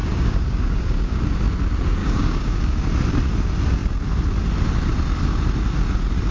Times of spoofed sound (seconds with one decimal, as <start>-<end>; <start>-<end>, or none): 0.0-1.2; 2.0-2.8